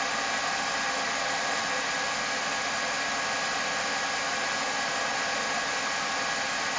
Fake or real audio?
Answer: real